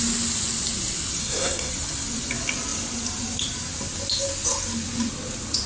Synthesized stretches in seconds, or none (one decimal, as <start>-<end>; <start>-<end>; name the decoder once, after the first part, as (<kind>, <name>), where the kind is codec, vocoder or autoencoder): 1.2-1.7 (codec, SNAC)